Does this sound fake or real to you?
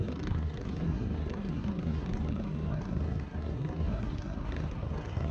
fake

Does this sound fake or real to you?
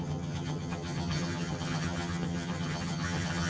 fake